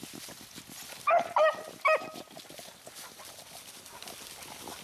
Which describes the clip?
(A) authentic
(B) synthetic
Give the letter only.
A